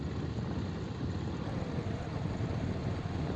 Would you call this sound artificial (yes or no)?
no